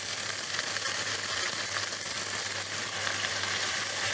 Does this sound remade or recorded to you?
recorded